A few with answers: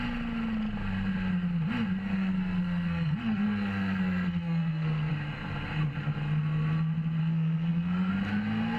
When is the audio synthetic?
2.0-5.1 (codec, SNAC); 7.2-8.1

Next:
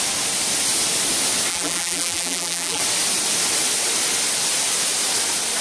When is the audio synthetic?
1.5-2.8 (vocoder, BigVGAN v2)

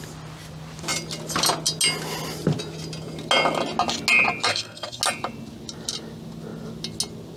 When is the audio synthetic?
4.5-5.0 (codec, SNAC)

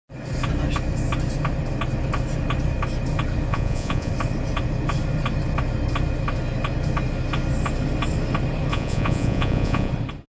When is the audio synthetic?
3.5-4.1 (vocoder, Vocos); 8.7-9.9

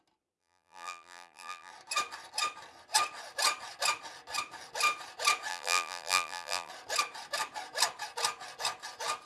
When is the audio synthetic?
0.4-1.7 (vocoder, BigVGAN v2); 5.5-6.7

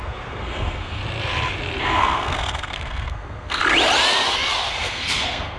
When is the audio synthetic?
0.0-1.0 (codec, SNAC); 1.8-3.6; 4.8-5.6

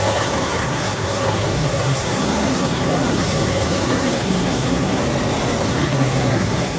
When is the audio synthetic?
0.0-5.0 (codec, SNAC); 5.7-6.8